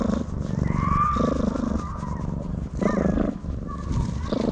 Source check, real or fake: real